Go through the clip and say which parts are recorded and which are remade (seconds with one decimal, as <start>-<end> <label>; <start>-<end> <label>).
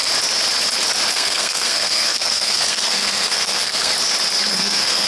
0.0-1.1 recorded; 1.1-3.9 remade; 3.9-4.5 recorded; 4.5-5.1 remade